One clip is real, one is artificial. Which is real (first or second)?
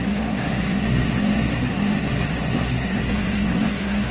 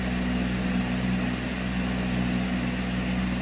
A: second